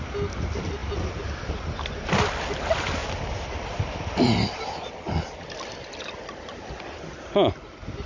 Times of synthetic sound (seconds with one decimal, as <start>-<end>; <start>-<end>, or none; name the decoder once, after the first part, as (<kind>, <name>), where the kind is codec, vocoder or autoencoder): none